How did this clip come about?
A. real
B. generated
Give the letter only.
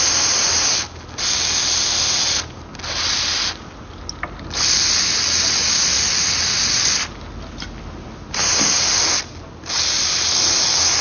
A